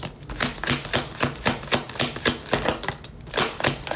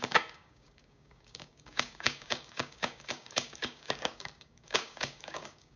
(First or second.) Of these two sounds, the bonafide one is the first